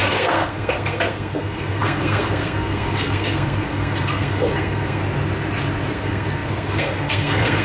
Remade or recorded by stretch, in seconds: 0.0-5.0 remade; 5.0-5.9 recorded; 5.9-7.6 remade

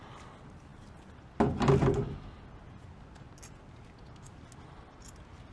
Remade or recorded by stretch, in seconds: 0.0-5.5 recorded

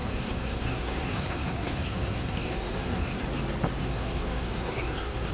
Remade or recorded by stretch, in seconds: 0.0-3.2 remade; 3.2-3.8 recorded; 3.8-5.3 remade

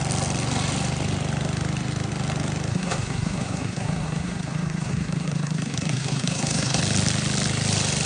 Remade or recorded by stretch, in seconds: 0.0-2.7 recorded; 2.7-6.8 remade; 6.8-8.1 recorded

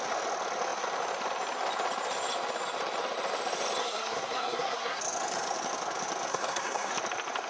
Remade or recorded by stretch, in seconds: 0.0-3.8 recorded; 3.8-5.0 remade; 5.0-6.3 recorded; 6.3-6.9 remade; 6.9-7.5 recorded

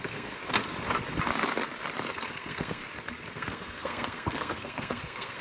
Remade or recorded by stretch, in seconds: 0.0-0.4 remade; 0.4-2.3 recorded; 2.3-2.8 remade; 2.8-3.3 recorded; 3.3-5.4 remade